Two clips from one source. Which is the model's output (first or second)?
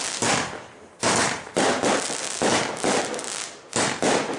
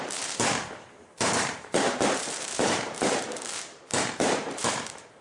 second